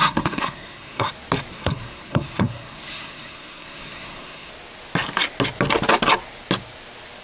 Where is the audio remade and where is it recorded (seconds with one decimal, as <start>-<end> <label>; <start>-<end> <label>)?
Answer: 0.0-1.1 remade; 1.1-1.5 recorded; 1.5-4.5 remade; 4.5-7.2 recorded

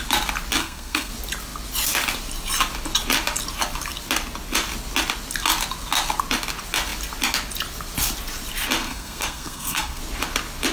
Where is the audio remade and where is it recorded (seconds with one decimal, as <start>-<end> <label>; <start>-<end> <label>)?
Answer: 0.0-0.6 recorded; 0.6-1.1 remade; 1.1-8.8 recorded; 8.8-10.0 remade; 10.0-10.7 recorded

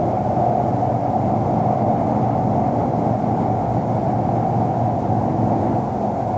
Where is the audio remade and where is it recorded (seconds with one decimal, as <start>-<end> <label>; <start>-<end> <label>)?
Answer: 0.0-6.4 recorded

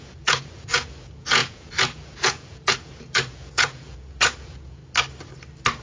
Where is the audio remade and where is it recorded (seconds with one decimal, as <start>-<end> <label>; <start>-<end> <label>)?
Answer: 0.0-4.8 remade; 4.8-5.8 recorded

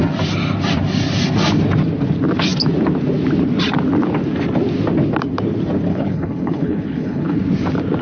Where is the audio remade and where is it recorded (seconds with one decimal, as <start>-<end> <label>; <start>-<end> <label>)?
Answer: 0.0-5.9 recorded; 5.9-7.4 remade; 7.4-8.0 recorded

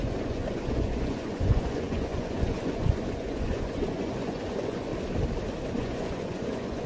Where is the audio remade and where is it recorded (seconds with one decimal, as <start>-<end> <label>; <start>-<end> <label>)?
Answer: 0.0-4.9 remade; 4.9-5.7 recorded; 5.7-6.9 remade